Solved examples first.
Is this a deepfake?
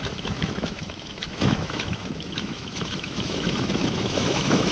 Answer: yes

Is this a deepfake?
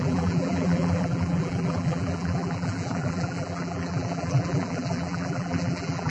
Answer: yes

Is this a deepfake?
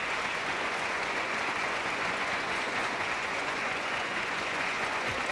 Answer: yes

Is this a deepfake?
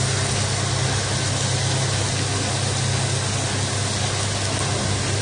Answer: no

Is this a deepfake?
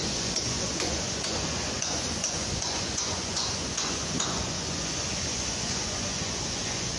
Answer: yes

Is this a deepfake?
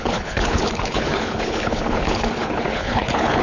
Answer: yes